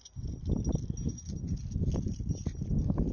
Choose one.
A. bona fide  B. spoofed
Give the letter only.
A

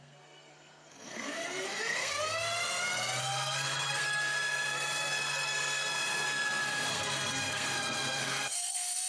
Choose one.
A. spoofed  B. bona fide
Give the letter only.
A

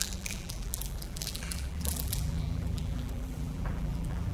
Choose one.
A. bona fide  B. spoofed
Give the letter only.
B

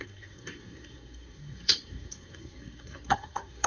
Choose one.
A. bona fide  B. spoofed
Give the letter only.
B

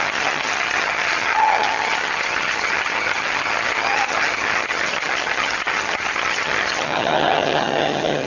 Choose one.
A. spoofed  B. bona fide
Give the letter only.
A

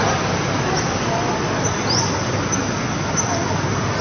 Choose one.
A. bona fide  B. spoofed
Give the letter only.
A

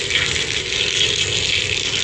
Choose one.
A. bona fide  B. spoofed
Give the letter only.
A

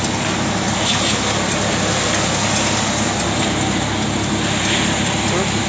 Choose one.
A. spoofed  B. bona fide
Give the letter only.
B